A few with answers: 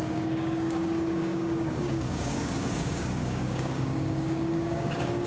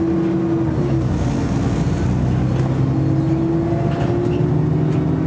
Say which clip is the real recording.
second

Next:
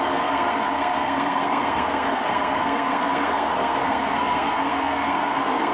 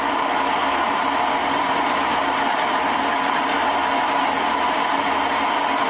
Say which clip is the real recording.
second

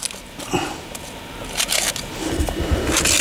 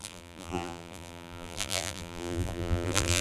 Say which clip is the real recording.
first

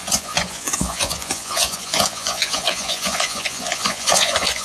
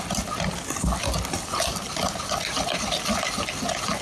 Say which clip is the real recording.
second